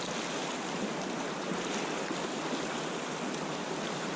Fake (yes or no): no